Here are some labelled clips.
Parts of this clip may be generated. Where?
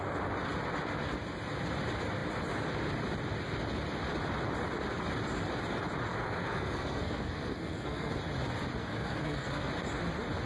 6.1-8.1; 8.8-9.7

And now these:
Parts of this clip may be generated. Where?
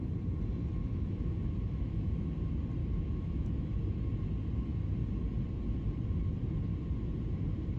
0.8-2.4; 2.8-3.8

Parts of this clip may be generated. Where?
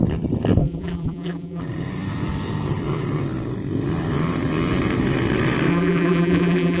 0.6-1.6; 5.7-6.8